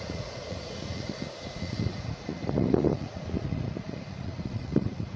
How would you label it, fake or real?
fake